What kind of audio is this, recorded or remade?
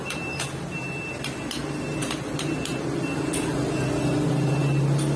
recorded